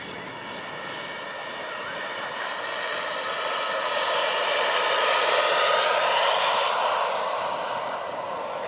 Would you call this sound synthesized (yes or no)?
no